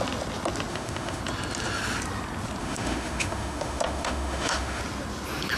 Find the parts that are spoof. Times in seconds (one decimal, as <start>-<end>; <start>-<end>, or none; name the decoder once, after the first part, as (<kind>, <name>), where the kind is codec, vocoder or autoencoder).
0.7-1.2 (autoencoder, DAC-VAE); 2.6-4.8

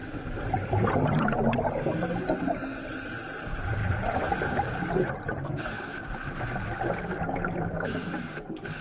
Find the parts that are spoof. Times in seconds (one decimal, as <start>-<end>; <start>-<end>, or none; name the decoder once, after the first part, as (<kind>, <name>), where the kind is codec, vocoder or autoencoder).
0.0-2.5 (vocoder, BigVGAN v2); 3.8-5.7